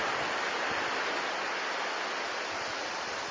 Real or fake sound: real